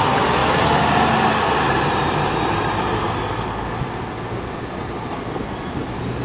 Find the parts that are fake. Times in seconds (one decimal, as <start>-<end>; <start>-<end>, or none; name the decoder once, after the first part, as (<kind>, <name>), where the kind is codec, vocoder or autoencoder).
none